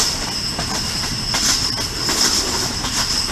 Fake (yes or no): no